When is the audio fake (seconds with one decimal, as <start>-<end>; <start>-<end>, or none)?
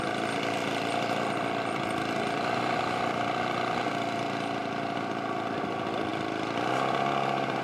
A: none